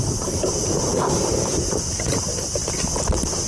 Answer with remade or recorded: remade